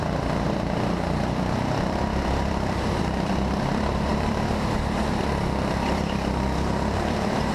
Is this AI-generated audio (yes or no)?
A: yes